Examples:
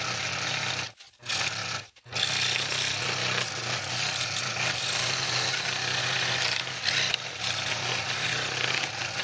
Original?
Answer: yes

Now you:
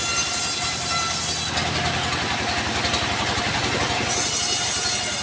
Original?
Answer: yes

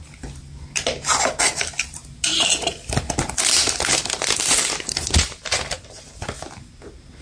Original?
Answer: yes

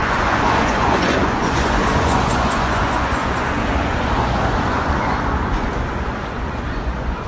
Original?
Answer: no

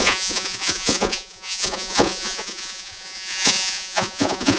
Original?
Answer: no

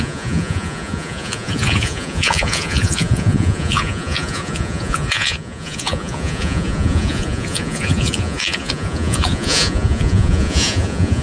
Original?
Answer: no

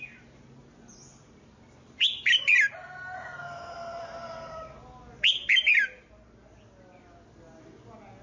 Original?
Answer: yes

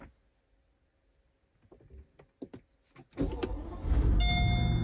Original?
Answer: yes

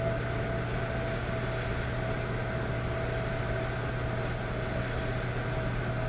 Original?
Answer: yes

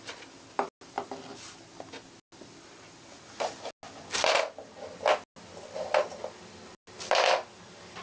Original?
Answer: yes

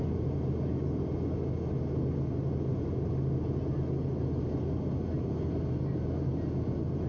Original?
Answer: yes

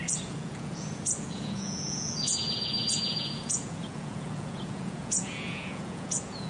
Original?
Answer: no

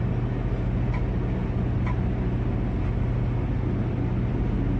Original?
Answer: yes